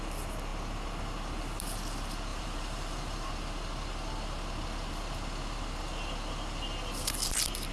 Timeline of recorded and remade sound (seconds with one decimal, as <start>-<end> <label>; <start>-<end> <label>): 0.0-2.3 recorded; 2.3-3.3 remade; 3.3-7.7 recorded